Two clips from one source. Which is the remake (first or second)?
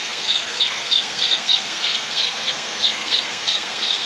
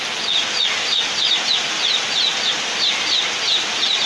first